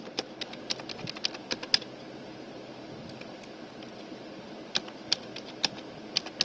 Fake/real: real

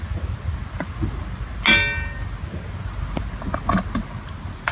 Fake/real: real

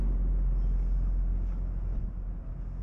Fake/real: real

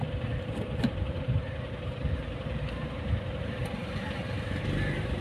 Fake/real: fake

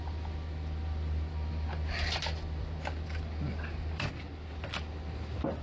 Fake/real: real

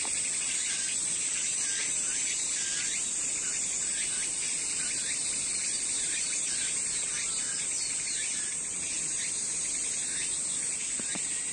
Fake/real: real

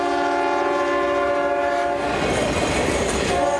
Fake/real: real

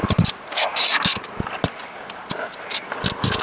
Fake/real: real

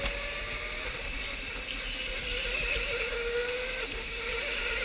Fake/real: real